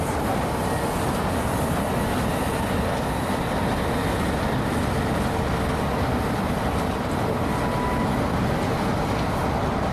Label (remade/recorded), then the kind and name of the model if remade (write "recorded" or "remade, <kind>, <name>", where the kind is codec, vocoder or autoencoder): recorded